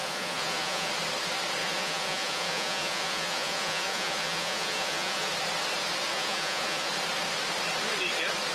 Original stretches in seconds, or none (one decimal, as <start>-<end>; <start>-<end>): 0.9-1.6; 5.3-6.1; 6.9-8.5